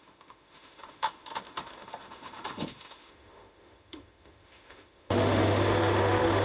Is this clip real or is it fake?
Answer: fake